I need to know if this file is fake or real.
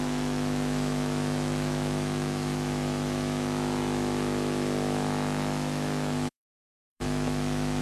fake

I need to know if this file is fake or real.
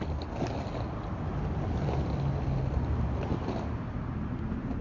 real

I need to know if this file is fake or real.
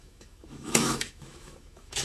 fake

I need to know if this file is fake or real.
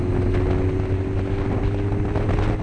real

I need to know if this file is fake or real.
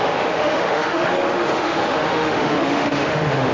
fake